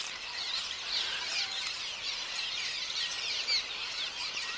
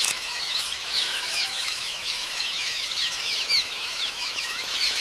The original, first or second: first